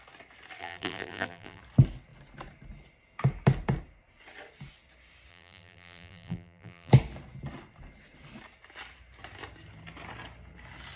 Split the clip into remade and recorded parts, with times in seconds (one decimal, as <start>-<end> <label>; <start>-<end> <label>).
0.0-0.6 recorded; 0.6-1.6 remade; 1.6-5.3 recorded; 5.3-6.9 remade; 6.9-11.0 recorded

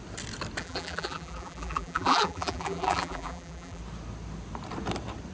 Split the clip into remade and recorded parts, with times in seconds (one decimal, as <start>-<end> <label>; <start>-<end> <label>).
0.0-0.6 recorded; 0.6-3.8 remade; 3.8-5.3 recorded